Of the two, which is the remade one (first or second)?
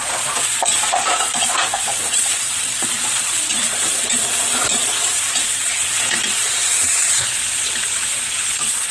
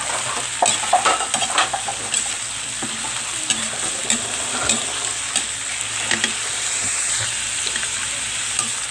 first